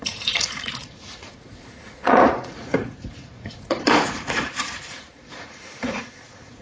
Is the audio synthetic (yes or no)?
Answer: yes